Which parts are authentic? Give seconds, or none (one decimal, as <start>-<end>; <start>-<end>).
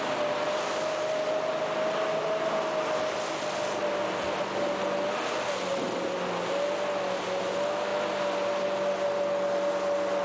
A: 0.0-10.2